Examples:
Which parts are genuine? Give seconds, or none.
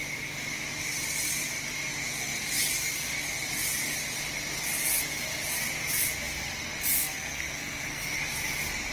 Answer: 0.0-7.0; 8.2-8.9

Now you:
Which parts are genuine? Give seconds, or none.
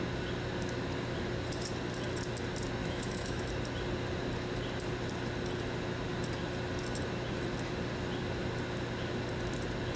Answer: 0.0-2.8; 3.5-10.0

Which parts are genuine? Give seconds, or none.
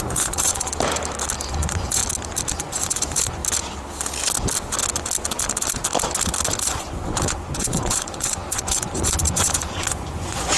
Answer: 0.7-1.5; 2.0-2.5; 3.4-6.6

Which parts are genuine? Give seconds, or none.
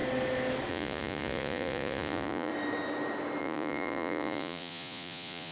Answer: 0.0-0.7; 2.5-3.4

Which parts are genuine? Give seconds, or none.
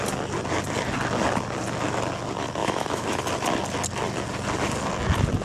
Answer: 0.0-2.6; 3.2-5.4